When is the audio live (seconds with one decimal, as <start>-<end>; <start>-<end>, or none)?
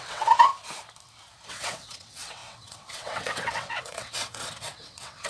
0.5-1.5